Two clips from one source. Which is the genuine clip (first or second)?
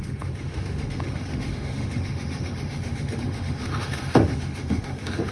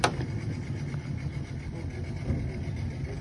second